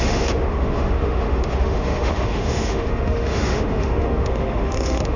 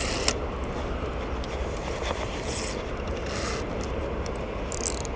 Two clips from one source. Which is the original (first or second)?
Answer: second